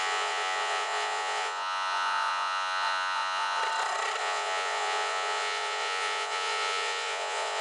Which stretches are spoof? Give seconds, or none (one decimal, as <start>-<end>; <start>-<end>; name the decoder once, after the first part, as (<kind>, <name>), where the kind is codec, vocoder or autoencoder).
0.0-3.6 (vocoder, Vocos); 4.2-7.6